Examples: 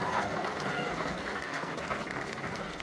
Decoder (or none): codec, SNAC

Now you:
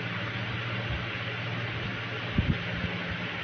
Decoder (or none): none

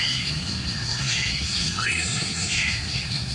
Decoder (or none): codec, SNAC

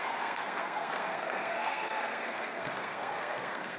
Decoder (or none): codec, SNAC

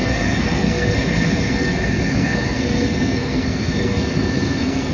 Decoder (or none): codec, SNAC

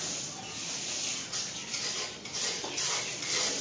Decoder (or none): none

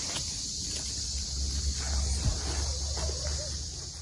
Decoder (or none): none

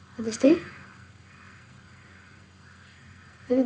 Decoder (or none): codec, SNAC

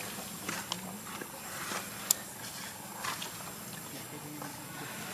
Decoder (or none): none